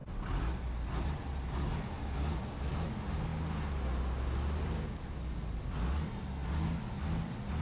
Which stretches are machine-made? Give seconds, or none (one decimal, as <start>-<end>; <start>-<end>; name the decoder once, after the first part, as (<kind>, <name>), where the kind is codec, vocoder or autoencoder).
none